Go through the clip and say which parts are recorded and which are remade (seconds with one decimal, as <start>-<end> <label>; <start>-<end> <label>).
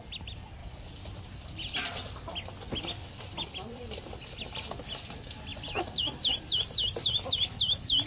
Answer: 0.0-0.6 recorded; 0.6-1.8 remade; 1.8-3.0 recorded; 3.0-4.2 remade; 4.2-5.5 recorded; 5.5-7.2 remade; 7.2-8.1 recorded